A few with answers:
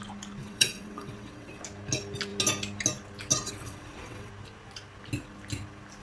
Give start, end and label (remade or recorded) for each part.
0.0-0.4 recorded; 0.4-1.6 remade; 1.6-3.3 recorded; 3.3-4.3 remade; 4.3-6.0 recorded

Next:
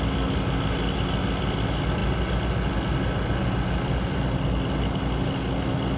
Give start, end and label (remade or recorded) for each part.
0.0-6.0 recorded

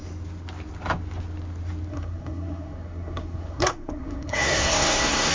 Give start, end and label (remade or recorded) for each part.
0.0-1.9 recorded; 1.9-5.3 remade

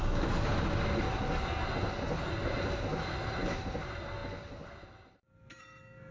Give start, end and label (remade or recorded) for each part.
0.0-6.1 recorded

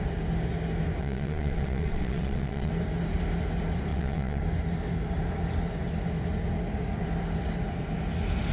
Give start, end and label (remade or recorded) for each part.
0.0-1.0 recorded; 1.0-2.7 remade; 2.7-3.9 recorded; 3.9-4.4 remade; 4.4-8.5 recorded

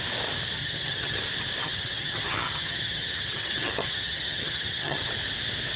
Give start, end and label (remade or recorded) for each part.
0.0-0.6 recorded; 0.6-1.2 remade; 1.2-1.6 recorded; 1.6-5.1 remade; 5.1-5.8 recorded

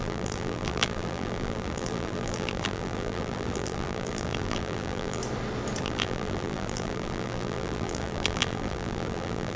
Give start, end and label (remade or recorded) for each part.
0.0-5.2 remade; 5.2-5.8 recorded; 5.8-9.6 remade

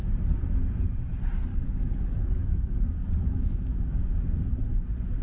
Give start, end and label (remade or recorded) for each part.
0.0-1.5 recorded; 1.5-4.6 remade; 4.6-5.2 recorded